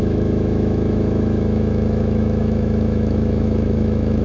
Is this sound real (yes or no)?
no